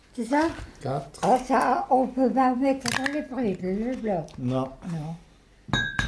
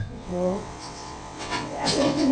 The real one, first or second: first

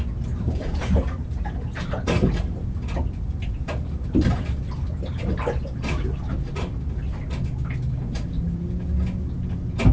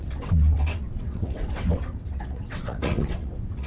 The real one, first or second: first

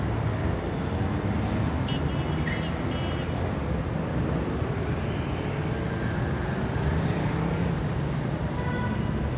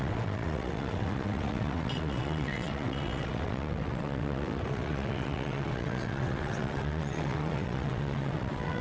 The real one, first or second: first